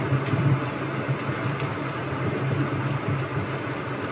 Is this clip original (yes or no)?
yes